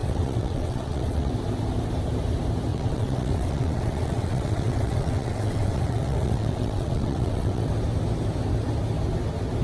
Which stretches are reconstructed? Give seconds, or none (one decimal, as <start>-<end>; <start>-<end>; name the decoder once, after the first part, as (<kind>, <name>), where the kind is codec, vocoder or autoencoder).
0.0-1.3 (vocoder, WaveNeXt); 2.7-7.7